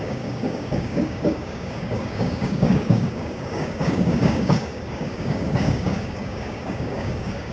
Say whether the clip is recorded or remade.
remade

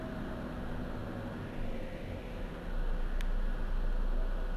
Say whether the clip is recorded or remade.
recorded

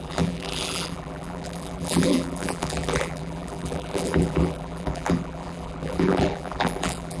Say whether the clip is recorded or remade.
remade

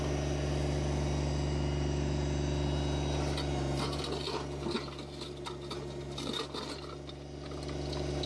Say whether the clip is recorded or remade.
recorded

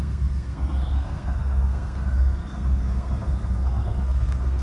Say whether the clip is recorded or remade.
remade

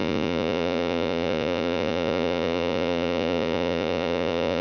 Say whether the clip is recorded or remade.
remade